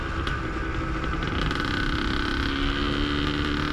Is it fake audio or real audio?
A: real